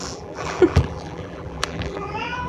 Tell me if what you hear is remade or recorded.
remade